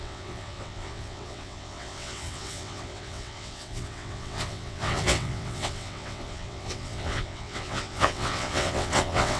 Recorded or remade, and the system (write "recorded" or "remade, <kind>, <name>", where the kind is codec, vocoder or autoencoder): remade, vocoder, WaveNeXt